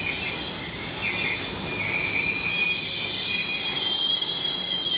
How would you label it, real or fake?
real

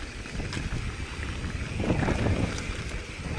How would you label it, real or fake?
real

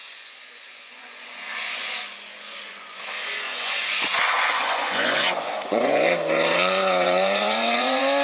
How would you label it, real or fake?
fake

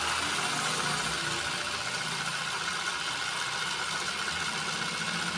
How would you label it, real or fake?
real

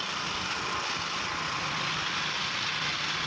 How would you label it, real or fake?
real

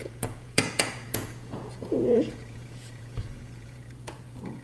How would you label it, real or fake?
fake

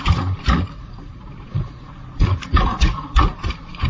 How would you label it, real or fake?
fake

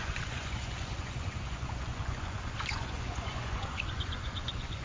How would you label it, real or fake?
fake